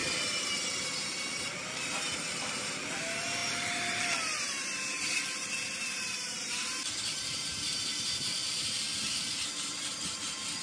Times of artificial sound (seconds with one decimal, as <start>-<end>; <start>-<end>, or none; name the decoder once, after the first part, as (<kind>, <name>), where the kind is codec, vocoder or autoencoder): 1.4-10.6 (vocoder, BigVGAN v2)